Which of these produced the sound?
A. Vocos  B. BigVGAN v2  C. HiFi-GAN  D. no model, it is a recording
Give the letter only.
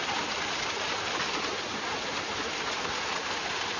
D